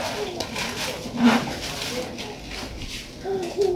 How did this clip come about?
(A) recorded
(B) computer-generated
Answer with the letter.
A